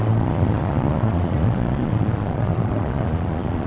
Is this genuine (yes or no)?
no